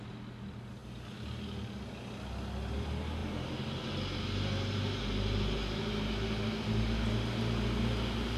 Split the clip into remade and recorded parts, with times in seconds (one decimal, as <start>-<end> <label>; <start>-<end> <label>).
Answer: 0.0-8.4 recorded